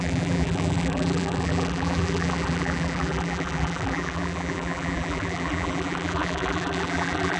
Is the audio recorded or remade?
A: remade